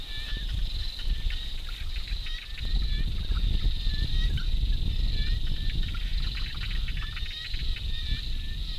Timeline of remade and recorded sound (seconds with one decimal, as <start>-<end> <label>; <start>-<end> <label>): 0.0-4.1 recorded; 4.1-4.7 remade; 4.7-8.8 recorded